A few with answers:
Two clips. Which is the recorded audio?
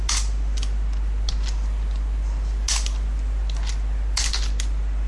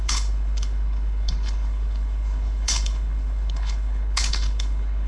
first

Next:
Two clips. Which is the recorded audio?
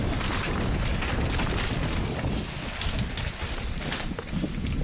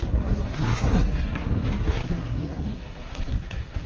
first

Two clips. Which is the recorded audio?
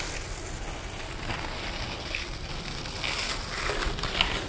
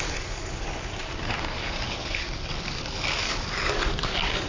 first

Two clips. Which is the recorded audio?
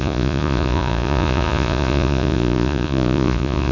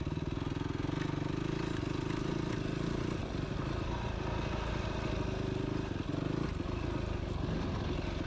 second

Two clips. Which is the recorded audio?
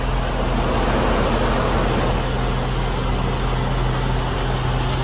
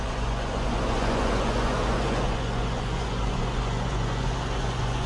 first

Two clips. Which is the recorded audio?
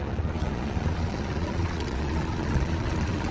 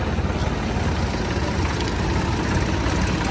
second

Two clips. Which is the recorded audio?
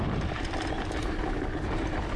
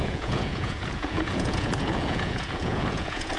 first